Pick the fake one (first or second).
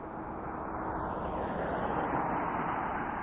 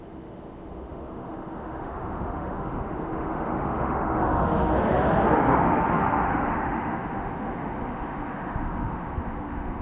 second